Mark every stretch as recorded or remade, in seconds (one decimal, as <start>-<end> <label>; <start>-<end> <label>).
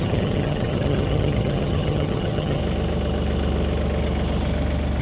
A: 0.0-2.6 remade; 2.6-5.0 recorded